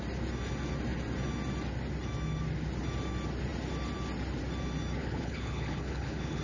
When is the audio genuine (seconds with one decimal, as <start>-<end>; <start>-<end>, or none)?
0.0-5.0